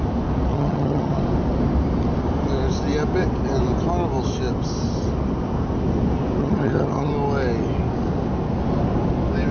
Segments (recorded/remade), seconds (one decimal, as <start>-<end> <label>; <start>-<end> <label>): 0.0-0.5 recorded; 0.5-1.2 remade; 1.2-6.4 recorded; 6.4-7.1 remade; 7.1-9.5 recorded